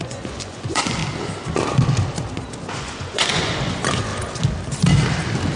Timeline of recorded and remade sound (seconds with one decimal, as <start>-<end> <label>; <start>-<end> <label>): 0.0-1.0 remade; 1.0-2.7 recorded; 2.7-4.1 remade; 4.1-5.6 recorded

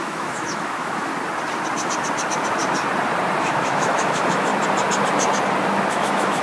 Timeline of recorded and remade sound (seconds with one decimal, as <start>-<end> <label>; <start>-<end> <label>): 0.0-1.1 remade; 1.1-3.4 recorded; 3.4-4.5 remade; 4.5-5.9 recorded; 5.9-6.4 remade

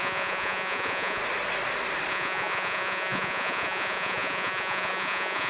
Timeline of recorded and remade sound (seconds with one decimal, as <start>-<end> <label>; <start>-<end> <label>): 0.0-1.2 remade; 1.2-2.1 recorded; 2.1-5.5 remade

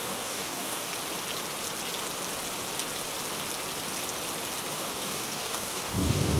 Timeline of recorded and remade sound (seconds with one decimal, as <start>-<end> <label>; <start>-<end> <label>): 0.0-0.9 remade; 0.9-4.7 recorded; 4.7-6.4 remade

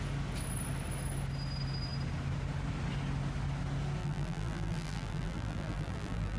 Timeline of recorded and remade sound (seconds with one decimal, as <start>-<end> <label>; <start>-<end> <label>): 0.0-4.0 recorded; 4.0-6.4 remade

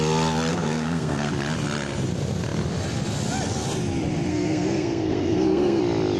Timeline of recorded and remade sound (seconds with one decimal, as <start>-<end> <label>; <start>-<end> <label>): 0.0-0.5 recorded; 0.5-1.3 remade; 1.3-4.3 recorded; 4.3-5.8 remade; 5.8-6.2 recorded

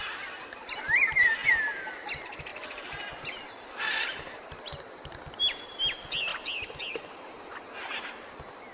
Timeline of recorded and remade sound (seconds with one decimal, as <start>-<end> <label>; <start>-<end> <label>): 0.0-0.6 remade; 0.6-1.4 recorded; 1.4-2.0 remade; 2.0-2.5 recorded; 2.5-4.4 remade; 4.4-8.7 recorded

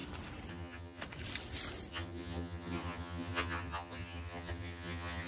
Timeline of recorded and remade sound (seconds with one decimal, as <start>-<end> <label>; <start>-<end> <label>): 0.0-0.5 recorded; 0.5-1.0 remade; 1.0-1.9 recorded; 1.9-5.3 remade